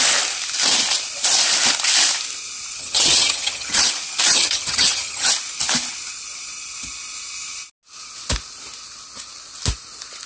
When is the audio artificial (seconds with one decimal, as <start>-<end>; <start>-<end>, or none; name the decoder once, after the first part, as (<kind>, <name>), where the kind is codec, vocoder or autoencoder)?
2.8-3.9 (vocoder, HiFi-GAN); 4.3-5.3